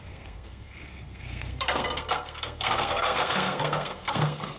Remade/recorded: remade